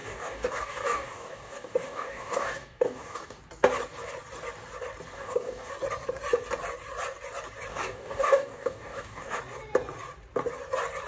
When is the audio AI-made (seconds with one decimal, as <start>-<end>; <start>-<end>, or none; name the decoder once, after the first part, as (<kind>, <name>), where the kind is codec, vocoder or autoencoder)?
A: 0.0-3.4 (codec, DAC); 5.1-5.7; 7.7-9.4